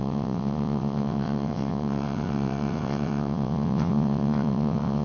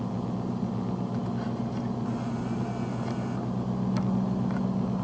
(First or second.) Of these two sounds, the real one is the second